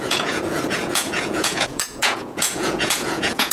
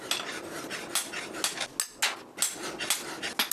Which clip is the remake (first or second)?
first